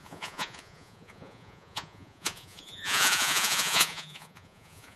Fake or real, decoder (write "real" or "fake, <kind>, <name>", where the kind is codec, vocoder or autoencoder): fake, vocoder, Vocos